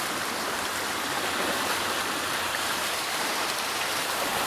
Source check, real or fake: fake